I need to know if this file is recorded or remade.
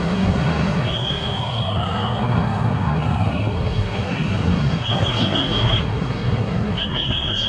remade